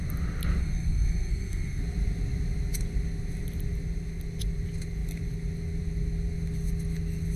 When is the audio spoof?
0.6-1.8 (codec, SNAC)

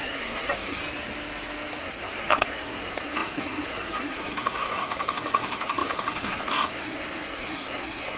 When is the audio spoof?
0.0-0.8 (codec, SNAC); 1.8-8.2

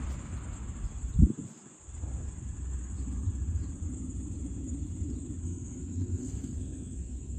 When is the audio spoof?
5.4-7.4 (codec, SNAC)

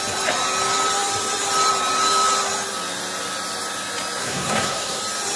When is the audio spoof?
4.2-5.0 (codec, SNAC)